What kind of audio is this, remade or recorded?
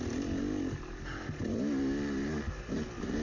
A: recorded